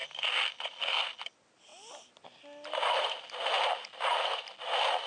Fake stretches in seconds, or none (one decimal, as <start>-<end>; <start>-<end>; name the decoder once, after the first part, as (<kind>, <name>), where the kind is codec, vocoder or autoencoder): none